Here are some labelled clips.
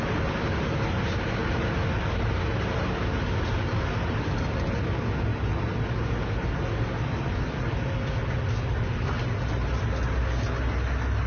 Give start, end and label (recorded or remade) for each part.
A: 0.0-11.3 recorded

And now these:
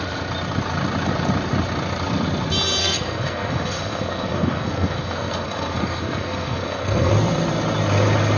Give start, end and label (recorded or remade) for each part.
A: 0.0-2.8 recorded; 2.8-7.1 remade; 7.1-8.4 recorded

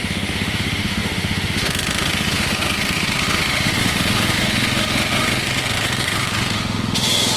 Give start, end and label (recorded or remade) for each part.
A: 0.0-7.4 remade

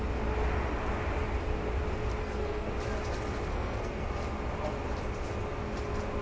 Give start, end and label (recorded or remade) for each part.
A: 0.0-2.2 recorded; 2.2-2.7 remade; 2.7-3.5 recorded; 3.5-4.1 remade; 4.1-6.2 recorded

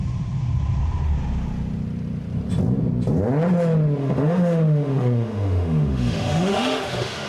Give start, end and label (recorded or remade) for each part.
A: 0.0-4.0 recorded; 4.0-7.3 remade

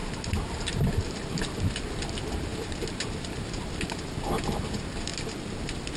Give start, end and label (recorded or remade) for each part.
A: 0.0-0.7 recorded; 0.7-5.1 remade; 5.1-5.6 recorded; 5.6-6.0 remade

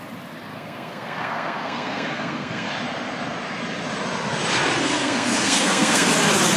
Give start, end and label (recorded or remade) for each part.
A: 0.0-0.5 recorded; 0.5-2.7 remade; 2.7-4.8 recorded; 4.8-6.1 remade; 6.1-6.6 recorded

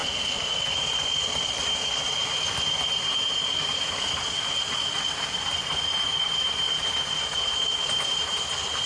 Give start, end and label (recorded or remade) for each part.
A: 0.0-8.9 recorded